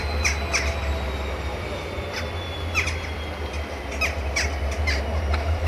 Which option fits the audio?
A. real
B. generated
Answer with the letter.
A